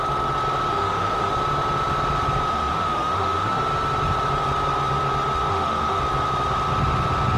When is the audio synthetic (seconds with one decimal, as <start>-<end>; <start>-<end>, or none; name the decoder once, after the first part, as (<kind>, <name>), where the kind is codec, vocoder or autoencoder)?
0.7-1.3 (autoencoder, DAC-VAE); 2.5-3.6; 5.5-6.0